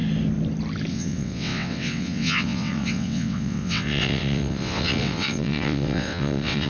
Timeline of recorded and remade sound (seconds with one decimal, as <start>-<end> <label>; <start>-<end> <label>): 0.0-0.9 recorded; 0.9-6.7 remade